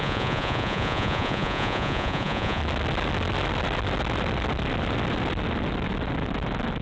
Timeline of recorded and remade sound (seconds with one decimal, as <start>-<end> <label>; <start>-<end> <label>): 0.0-2.6 remade; 2.6-6.8 recorded